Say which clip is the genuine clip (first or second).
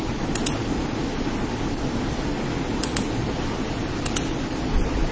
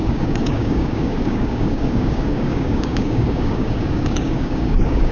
first